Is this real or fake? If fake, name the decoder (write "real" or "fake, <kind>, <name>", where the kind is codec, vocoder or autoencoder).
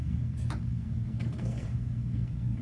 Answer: fake, codec, SNAC